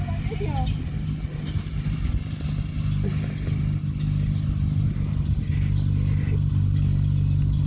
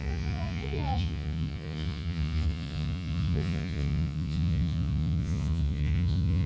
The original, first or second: first